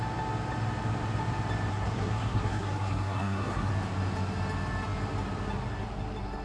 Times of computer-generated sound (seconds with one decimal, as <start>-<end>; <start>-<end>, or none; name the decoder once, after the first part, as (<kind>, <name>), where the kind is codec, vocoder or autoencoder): 1.7-3.7 (codec, SNAC)